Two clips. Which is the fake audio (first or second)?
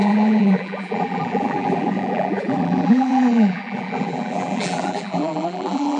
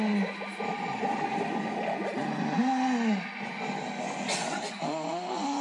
first